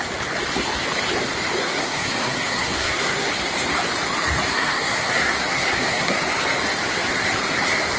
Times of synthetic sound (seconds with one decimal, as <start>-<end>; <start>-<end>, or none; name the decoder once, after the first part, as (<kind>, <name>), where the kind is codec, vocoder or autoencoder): 1.6-3.3 (codec, SNAC); 4.5-6.2